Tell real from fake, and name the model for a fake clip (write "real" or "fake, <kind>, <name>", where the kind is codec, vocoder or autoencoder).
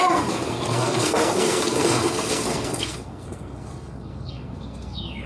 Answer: fake, codec, SNAC